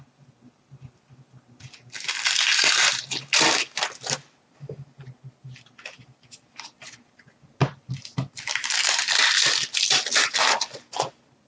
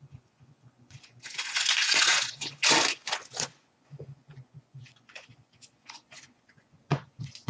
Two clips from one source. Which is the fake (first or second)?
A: second